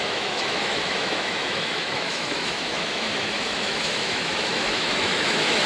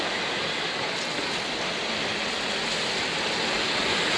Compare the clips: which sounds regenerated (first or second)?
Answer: first